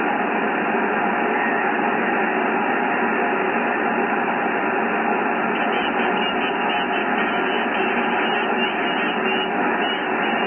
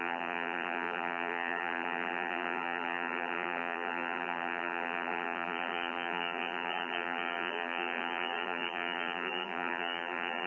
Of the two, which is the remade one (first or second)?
second